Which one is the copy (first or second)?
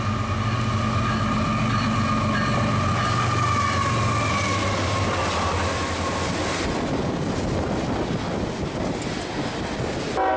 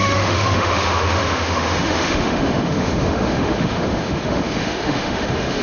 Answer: second